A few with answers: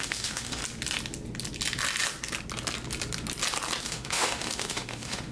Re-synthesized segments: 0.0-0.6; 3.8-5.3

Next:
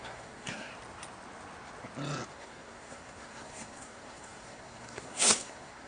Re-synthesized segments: 0.0-0.7; 2.3-5.9

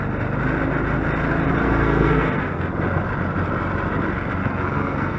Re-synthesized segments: 1.6-2.7; 4.4-5.2

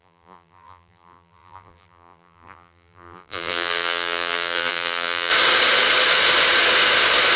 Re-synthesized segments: 0.0-5.3